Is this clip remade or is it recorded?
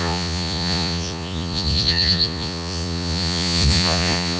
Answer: remade